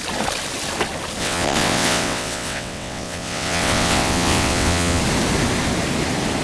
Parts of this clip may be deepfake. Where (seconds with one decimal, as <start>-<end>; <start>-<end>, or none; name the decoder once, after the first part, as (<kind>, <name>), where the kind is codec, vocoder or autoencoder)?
1.2-5.0 (vocoder, WaveNeXt)